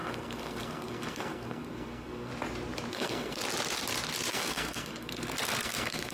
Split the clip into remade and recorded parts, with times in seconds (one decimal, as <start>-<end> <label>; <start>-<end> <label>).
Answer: 0.0-2.3 remade; 2.3-2.9 recorded; 2.9-3.4 remade; 3.4-4.3 recorded; 4.3-6.1 remade